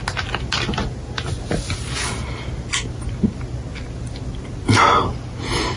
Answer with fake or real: real